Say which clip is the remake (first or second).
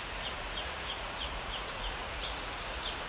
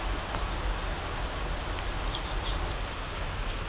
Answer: first